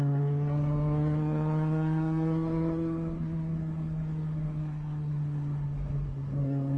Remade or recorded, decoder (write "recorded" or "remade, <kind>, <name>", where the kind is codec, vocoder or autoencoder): remade, codec, SNAC